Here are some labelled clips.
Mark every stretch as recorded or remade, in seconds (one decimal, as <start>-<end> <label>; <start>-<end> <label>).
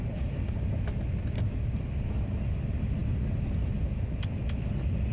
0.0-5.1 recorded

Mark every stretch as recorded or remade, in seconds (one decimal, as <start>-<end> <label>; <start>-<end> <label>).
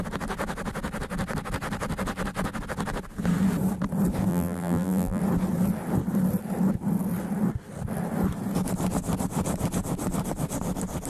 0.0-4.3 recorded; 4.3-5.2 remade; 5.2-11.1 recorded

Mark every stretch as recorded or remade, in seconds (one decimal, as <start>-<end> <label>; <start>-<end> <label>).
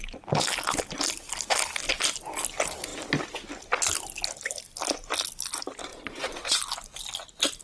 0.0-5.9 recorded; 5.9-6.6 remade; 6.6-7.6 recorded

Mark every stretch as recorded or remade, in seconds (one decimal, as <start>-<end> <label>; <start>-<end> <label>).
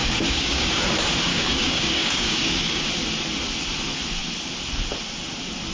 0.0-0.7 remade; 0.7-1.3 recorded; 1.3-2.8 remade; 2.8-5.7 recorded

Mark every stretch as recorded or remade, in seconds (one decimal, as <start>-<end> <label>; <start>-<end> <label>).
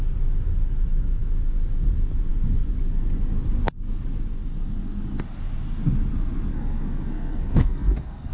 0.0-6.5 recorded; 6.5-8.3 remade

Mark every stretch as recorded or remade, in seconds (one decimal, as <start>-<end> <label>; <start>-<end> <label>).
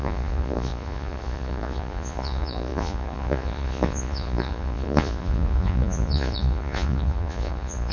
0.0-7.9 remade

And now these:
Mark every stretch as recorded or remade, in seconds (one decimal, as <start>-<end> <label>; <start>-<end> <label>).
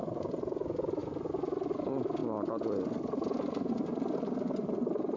0.0-5.2 recorded